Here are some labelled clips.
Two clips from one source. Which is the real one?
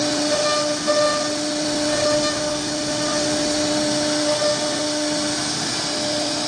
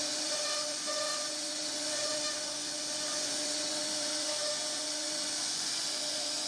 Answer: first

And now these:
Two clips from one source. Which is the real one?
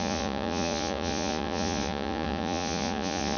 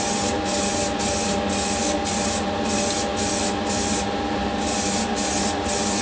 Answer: second